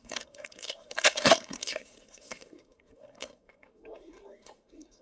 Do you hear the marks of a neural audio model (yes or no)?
yes